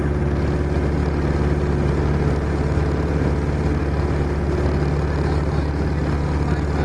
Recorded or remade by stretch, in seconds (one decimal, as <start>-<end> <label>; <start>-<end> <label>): 0.0-6.8 recorded